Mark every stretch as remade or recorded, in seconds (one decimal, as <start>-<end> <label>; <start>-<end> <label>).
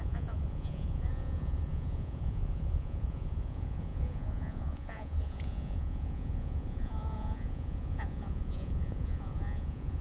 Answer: 0.0-10.0 remade